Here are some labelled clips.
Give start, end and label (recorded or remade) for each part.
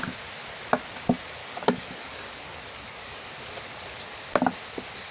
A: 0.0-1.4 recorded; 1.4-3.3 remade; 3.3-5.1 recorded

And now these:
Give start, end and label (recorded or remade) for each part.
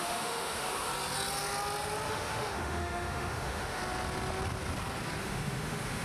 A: 0.0-0.9 remade; 0.9-2.1 recorded; 2.1-3.8 remade; 3.8-5.2 recorded; 5.2-6.0 remade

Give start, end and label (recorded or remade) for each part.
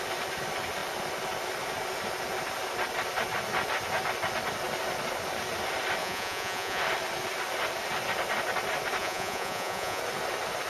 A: 0.0-6.0 recorded; 6.0-6.8 remade; 6.8-9.0 recorded; 9.0-10.0 remade; 10.0-10.7 recorded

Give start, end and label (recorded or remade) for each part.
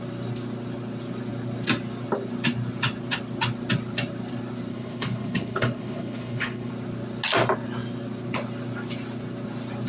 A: 0.0-4.7 recorded; 4.7-6.7 remade; 6.7-9.9 recorded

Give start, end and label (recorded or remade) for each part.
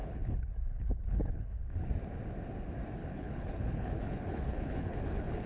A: 0.0-1.6 remade; 1.6-3.0 recorded; 3.0-5.5 remade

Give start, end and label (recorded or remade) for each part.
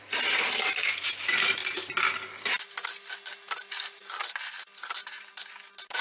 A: 0.0-1.6 remade; 1.6-4.8 recorded; 4.8-6.0 remade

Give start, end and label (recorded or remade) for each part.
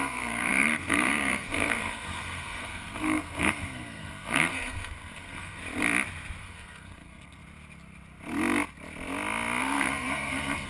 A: 0.0-5.6 remade; 5.6-6.4 recorded; 6.4-7.4 remade; 7.4-9.6 recorded; 9.6-10.7 remade